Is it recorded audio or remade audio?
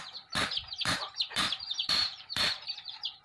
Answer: remade